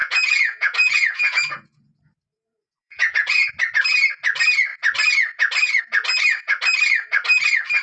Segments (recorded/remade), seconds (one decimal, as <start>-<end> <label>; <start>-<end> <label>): 0.0-3.5 remade; 3.5-7.8 recorded